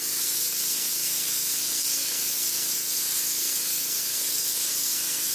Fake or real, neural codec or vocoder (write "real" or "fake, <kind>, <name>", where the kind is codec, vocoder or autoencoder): fake, codec, SNAC